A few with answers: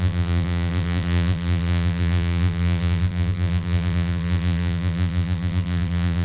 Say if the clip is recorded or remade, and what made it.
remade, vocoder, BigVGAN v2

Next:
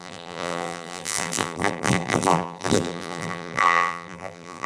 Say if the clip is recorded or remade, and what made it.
remade, vocoder, BigVGAN v2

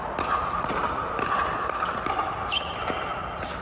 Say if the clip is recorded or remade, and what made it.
recorded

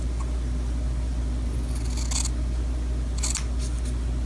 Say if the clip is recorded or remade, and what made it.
recorded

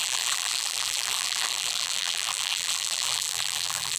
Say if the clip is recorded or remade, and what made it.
remade, vocoder, BigVGAN v2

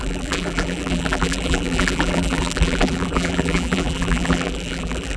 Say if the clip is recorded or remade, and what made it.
remade, vocoder, BigVGAN v2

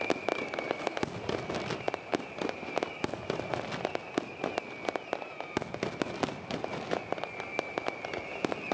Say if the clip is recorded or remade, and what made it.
recorded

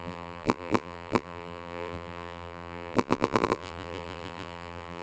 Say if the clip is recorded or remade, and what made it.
remade, vocoder, BigVGAN v2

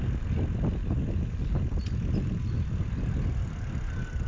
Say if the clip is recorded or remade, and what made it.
recorded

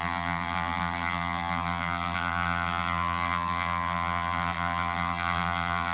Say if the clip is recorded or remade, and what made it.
remade, vocoder, BigVGAN v2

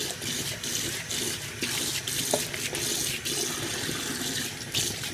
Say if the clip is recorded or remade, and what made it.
recorded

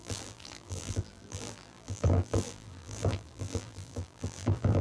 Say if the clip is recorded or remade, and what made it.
remade, vocoder, BigVGAN v2